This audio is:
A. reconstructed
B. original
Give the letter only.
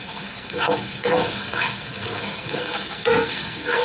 A